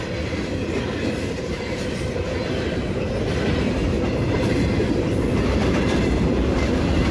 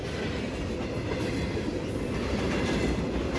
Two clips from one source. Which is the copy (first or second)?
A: first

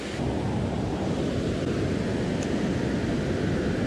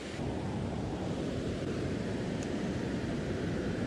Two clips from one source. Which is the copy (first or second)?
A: second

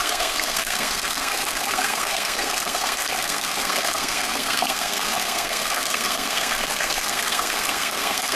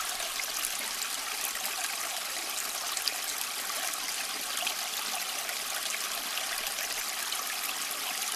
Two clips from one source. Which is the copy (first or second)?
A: first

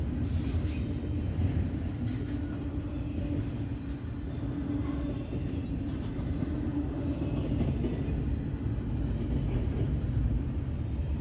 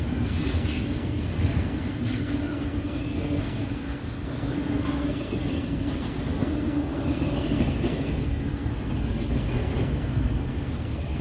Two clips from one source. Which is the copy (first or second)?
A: second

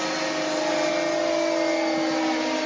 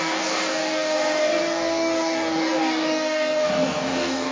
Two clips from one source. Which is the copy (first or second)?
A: second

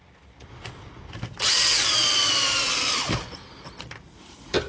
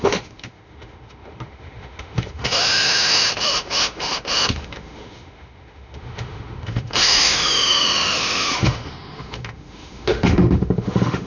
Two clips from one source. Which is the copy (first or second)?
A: second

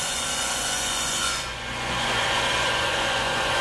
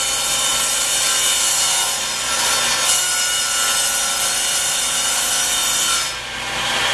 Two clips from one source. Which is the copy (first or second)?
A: first